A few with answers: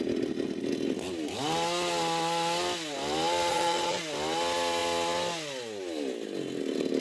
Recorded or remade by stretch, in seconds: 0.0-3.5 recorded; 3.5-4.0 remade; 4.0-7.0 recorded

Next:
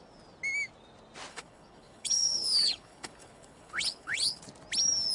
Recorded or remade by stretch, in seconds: 0.0-1.3 recorded; 1.3-4.4 remade; 4.4-5.1 recorded

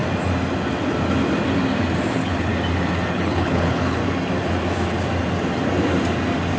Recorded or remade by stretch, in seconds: 0.0-2.1 recorded; 2.1-2.5 remade; 2.5-3.1 recorded; 3.1-4.0 remade; 4.0-6.6 recorded

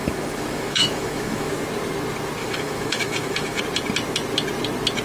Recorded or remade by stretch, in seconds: 0.0-1.5 remade; 1.5-2.4 recorded; 2.4-3.6 remade; 3.6-5.0 recorded

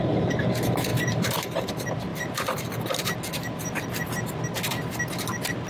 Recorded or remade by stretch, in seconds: 0.0-0.9 recorded; 0.9-1.7 remade; 1.7-2.1 recorded; 2.1-2.8 remade; 2.8-5.7 recorded